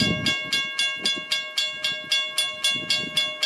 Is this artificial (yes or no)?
no